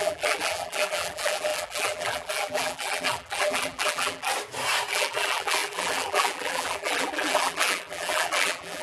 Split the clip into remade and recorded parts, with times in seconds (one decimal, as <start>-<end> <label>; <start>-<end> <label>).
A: 0.0-4.3 remade; 4.3-4.9 recorded; 4.9-8.8 remade